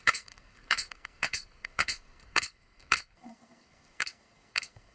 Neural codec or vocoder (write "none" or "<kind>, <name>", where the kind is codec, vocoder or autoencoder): codec, SNAC